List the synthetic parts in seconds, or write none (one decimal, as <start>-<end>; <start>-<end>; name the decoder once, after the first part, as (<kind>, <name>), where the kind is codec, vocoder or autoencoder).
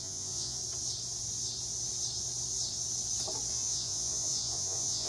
0.0-0.6 (vocoder, Vocos); 3.5-5.1